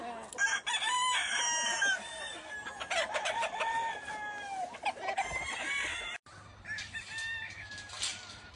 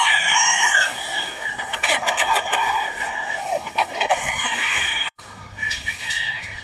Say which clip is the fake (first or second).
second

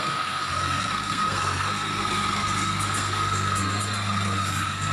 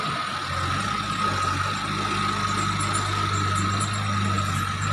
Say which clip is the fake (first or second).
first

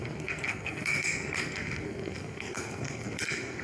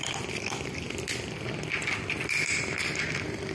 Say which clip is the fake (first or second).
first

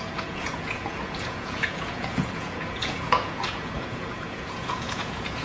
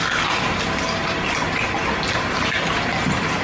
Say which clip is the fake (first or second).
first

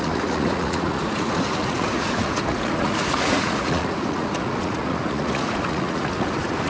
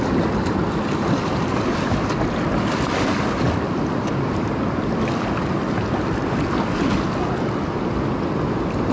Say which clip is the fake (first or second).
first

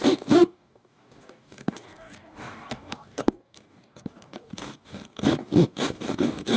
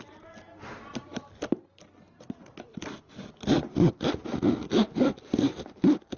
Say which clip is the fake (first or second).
first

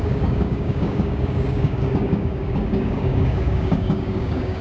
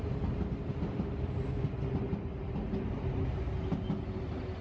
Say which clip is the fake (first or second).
first